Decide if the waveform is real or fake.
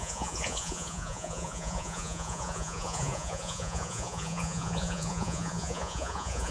fake